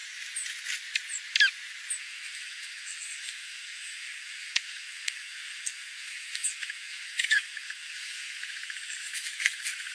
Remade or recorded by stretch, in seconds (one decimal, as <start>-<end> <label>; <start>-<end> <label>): 0.0-2.0 recorded; 2.0-9.9 remade